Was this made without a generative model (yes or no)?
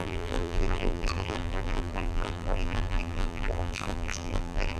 no